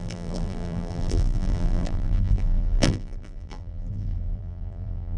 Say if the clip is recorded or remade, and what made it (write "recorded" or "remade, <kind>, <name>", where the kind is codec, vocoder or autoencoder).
remade, vocoder, BigVGAN v2